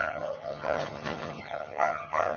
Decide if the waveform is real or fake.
fake